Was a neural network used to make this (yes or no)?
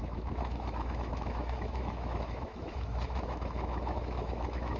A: yes